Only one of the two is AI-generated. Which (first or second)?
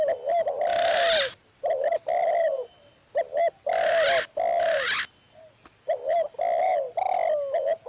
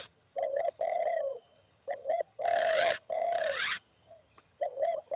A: second